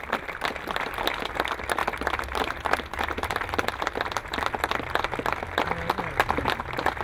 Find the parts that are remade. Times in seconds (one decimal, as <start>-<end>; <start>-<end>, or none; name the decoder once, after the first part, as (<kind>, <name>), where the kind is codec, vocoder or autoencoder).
none